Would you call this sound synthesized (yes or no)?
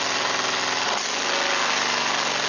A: no